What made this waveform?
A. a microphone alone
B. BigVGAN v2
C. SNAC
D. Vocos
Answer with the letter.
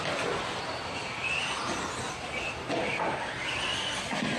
A